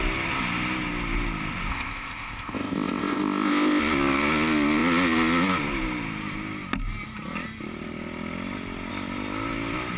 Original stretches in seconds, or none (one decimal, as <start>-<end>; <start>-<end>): 0.0-1.7; 3.8-10.0